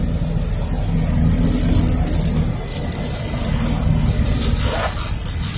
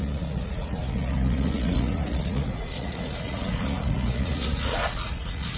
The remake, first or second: second